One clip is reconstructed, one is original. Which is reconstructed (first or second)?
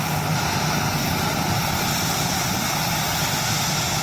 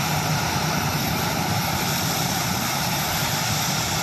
second